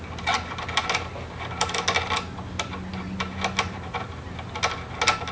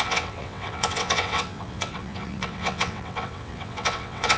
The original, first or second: first